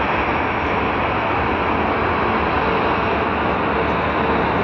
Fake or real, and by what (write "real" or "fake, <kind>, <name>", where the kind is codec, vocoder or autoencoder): real